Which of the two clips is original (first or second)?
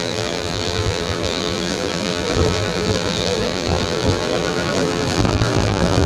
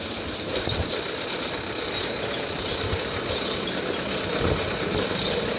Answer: second